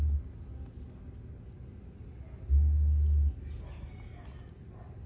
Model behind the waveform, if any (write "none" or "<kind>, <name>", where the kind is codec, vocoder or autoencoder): none